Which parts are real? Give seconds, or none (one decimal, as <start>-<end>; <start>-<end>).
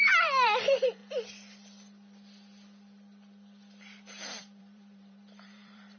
1.0-4.6